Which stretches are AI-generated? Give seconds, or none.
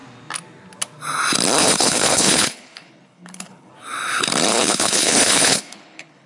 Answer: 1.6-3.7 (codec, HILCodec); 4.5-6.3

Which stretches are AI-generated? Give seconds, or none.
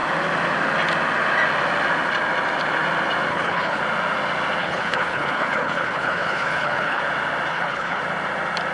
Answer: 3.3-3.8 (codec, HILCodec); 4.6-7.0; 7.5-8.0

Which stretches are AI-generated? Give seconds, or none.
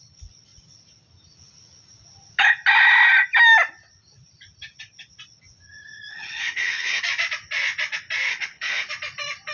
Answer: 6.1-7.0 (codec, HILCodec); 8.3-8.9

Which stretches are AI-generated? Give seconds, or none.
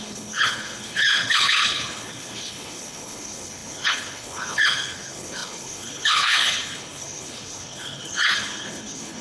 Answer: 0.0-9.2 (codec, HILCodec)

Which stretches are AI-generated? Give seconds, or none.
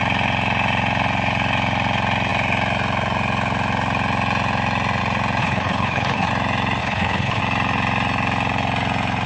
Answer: 5.4-6.3 (codec, HILCodec); 6.8-7.4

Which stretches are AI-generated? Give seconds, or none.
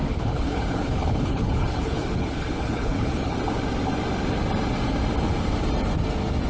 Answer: 0.0-3.3 (codec, HILCodec)